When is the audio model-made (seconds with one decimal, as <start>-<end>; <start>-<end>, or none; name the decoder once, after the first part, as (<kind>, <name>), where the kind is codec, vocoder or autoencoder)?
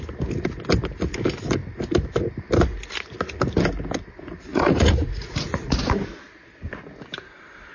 4.5-5.9 (vocoder, Vocos)